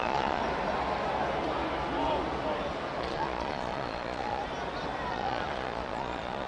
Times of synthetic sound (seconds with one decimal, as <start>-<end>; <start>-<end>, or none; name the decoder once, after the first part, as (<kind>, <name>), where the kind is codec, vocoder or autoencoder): 0.0-0.4 (vocoder, Vocos); 3.0-4.4; 5.1-6.5